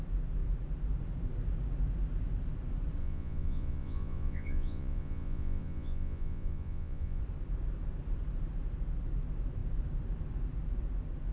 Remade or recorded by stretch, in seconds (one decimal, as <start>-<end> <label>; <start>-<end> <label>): 0.0-3.0 recorded; 3.0-7.2 remade; 7.2-11.3 recorded